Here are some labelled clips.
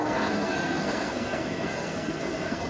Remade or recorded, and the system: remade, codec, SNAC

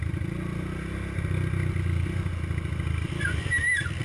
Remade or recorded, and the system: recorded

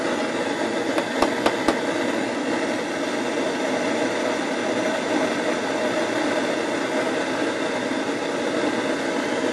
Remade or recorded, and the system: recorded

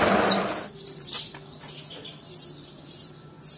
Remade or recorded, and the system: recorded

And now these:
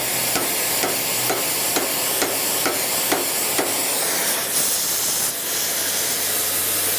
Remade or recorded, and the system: recorded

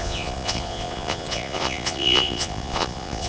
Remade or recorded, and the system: remade, vocoder, Vocos